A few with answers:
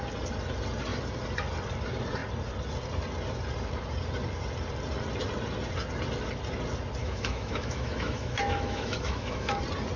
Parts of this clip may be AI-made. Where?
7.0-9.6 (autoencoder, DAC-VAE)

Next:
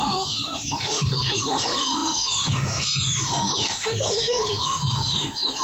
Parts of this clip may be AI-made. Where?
0.0-5.6 (autoencoder, DAC-VAE)

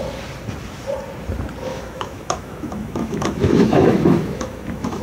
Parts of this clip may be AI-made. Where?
1.7-5.0 (autoencoder, DAC-VAE)

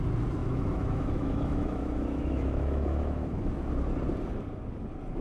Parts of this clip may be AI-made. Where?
0.4-3.5 (autoencoder, DAC-VAE)